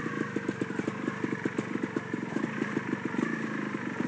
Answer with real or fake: real